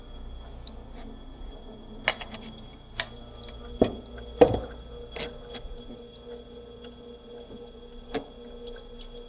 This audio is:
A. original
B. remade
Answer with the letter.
A